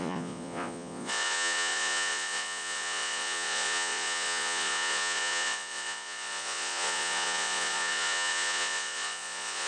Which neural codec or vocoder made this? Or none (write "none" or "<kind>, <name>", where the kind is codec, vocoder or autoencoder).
vocoder, Vocos